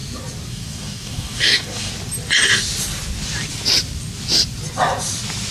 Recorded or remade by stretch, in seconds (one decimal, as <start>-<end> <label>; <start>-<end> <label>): 0.0-0.5 recorded; 0.5-1.9 remade; 1.9-5.5 recorded